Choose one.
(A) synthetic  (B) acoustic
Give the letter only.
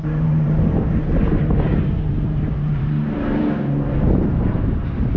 A